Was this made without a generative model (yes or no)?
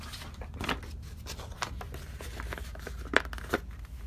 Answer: yes